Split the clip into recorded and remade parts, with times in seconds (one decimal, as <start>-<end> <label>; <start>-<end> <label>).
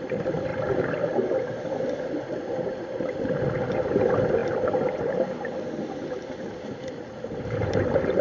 0.0-8.2 remade